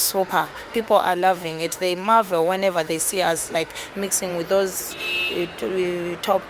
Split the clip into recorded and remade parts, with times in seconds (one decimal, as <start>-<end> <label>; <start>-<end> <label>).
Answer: 0.0-3.9 remade; 3.9-6.5 recorded